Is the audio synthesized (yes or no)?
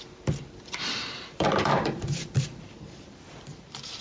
yes